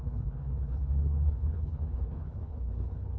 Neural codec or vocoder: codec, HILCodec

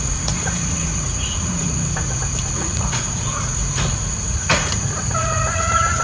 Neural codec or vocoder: vocoder, Vocos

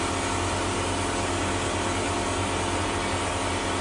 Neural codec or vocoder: none